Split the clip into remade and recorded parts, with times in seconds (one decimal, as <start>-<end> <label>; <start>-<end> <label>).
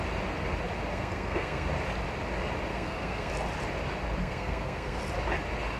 0.0-0.9 recorded; 0.9-1.7 remade; 1.7-2.7 recorded; 2.7-3.3 remade; 3.3-4.2 recorded; 4.2-5.0 remade; 5.0-5.8 recorded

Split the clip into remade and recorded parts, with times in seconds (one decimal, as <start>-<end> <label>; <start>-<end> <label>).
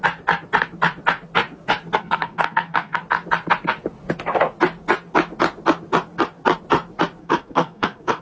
0.0-2.0 recorded; 2.0-3.0 remade; 3.0-7.2 recorded; 7.2-8.2 remade